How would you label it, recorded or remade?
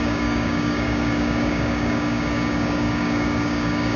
remade